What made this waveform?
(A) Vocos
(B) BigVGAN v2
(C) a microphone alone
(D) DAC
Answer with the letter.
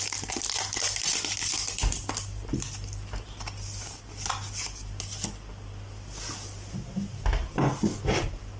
B